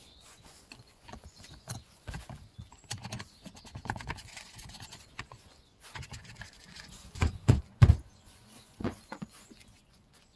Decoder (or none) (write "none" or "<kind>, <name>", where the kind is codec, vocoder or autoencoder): vocoder, Vocos